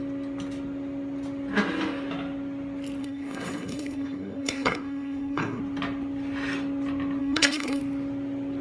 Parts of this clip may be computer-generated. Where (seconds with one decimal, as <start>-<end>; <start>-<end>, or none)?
3.0-5.6; 7.2-7.8